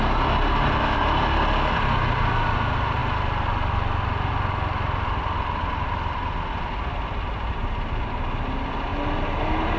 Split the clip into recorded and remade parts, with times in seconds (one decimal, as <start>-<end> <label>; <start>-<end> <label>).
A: 0.0-9.8 recorded